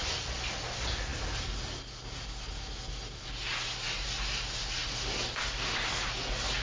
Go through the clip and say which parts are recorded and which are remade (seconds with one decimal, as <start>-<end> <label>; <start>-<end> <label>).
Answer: 0.0-6.6 recorded

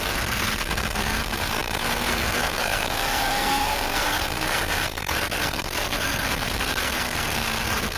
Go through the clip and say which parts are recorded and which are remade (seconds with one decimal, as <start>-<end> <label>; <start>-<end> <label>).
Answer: 0.0-8.0 remade

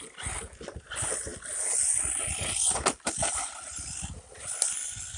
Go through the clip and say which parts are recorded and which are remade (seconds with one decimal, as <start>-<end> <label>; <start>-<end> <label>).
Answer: 0.0-5.2 recorded

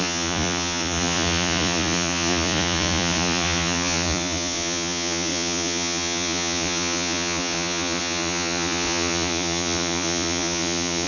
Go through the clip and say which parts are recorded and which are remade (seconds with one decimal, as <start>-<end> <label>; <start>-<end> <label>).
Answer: 0.0-11.1 remade